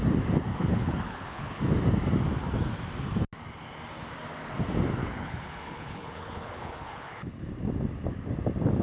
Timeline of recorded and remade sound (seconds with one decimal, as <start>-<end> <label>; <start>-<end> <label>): 0.0-0.5 recorded; 0.5-1.6 remade; 1.6-5.0 recorded; 5.0-7.5 remade; 7.5-8.8 recorded